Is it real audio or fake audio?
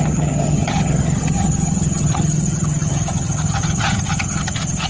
fake